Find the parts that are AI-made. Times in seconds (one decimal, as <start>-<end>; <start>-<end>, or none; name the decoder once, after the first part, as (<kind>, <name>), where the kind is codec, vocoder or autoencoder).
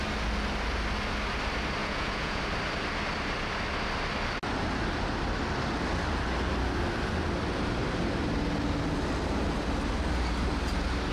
1.8-2.4 (vocoder, Vocos)